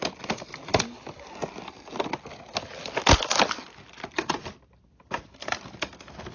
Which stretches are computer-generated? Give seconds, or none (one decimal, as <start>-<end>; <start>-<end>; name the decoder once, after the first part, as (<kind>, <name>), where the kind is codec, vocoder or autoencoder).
none